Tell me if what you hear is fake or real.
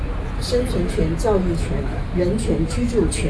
real